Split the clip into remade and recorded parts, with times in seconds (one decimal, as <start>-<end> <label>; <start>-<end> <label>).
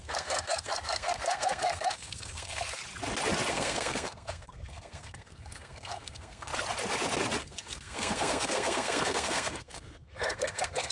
0.0-2.8 remade; 2.8-3.5 recorded; 3.5-6.5 remade; 6.5-7.4 recorded; 7.4-10.9 remade